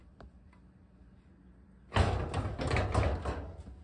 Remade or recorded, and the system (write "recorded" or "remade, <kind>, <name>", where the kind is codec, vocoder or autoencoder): recorded